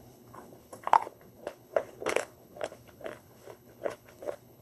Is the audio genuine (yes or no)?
no